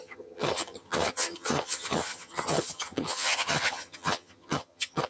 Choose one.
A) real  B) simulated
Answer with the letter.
B